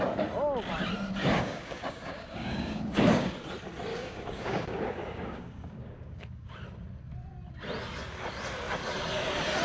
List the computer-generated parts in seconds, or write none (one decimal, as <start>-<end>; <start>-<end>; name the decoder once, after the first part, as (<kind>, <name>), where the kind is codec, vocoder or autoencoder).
1.2-3.3 (codec, DAC); 3.9-6.5